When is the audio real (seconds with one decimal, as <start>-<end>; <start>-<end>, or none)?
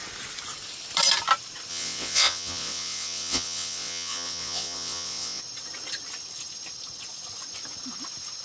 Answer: 0.0-1.7; 5.4-8.4